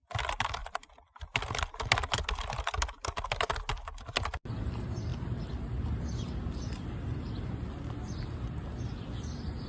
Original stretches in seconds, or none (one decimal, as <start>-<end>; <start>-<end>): 0.0-9.7